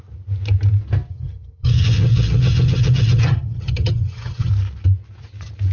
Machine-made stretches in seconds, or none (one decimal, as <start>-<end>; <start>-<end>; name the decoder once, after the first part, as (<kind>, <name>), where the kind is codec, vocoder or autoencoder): 1.1-4.5 (vocoder, HiFi-GAN)

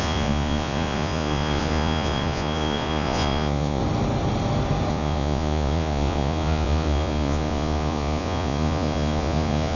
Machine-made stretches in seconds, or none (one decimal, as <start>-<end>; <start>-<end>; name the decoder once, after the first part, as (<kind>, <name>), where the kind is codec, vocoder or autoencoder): 0.0-3.8 (vocoder, Vocos); 4.9-9.8

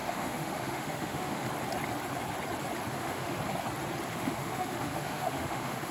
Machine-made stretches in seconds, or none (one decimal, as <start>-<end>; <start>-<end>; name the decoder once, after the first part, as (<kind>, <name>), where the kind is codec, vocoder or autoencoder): 0.0-1.5 (autoencoder, DAC-VAE); 2.9-3.4; 4.1-5.9

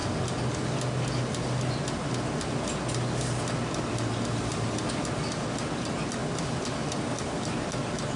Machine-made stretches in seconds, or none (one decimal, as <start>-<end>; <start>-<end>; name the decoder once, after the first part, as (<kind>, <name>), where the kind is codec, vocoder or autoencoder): none

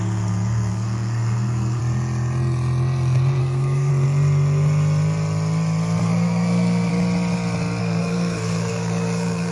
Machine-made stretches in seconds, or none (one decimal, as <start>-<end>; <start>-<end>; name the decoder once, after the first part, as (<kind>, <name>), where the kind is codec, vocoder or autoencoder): 0.0-1.8 (codec, SNAC); 3.4-3.9; 6.0-6.9; 7.8-9.5

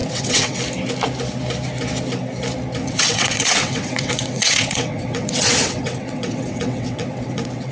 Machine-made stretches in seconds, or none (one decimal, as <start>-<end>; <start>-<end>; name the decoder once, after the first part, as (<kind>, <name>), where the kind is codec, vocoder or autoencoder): 0.0-0.6 (vocoder, WaveNeXt); 2.8-7.7

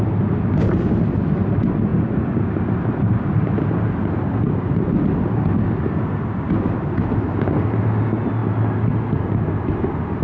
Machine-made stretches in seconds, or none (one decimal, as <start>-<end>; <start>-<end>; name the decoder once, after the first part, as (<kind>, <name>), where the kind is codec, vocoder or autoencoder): none